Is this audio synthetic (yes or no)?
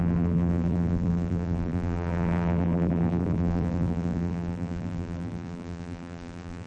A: yes